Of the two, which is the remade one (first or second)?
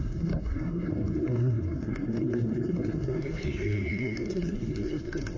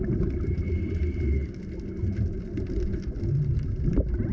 first